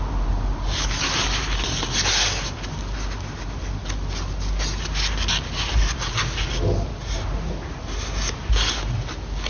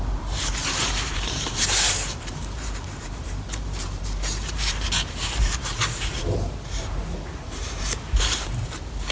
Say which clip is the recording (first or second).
first